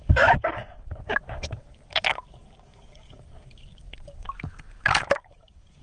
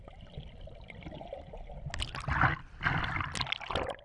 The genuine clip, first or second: second